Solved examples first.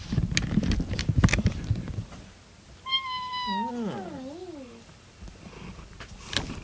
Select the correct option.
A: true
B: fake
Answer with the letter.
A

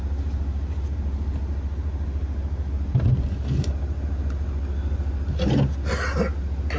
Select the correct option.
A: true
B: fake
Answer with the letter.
A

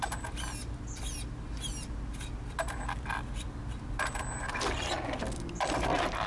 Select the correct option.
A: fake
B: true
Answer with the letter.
B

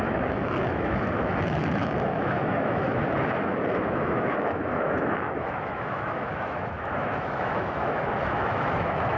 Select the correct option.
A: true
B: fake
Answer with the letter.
B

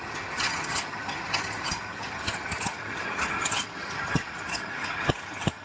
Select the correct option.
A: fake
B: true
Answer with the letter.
A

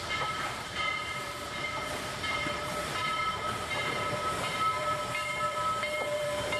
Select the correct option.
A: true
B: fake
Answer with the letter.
B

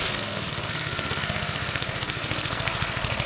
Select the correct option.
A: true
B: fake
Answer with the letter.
B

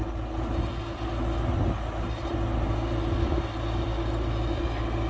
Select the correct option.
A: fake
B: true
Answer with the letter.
B